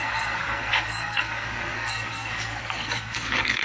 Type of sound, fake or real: fake